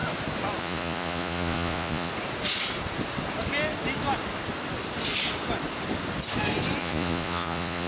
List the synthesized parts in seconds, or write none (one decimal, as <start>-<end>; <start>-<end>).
0.6-2.1; 6.8-7.9